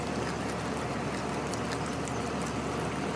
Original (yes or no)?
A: yes